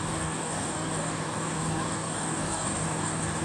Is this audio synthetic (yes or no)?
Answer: yes